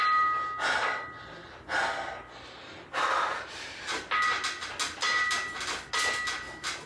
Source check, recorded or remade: recorded